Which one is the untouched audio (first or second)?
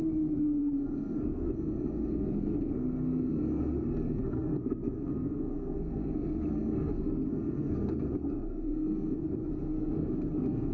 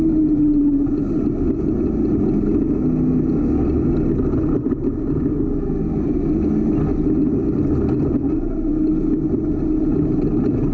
second